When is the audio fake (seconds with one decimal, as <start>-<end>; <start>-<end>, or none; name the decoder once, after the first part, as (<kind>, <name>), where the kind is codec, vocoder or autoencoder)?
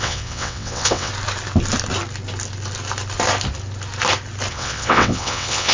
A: 0.0-1.1 (vocoder, WaveNeXt); 4.5-5.7